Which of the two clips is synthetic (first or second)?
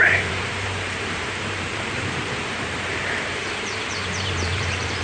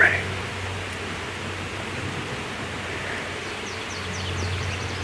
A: first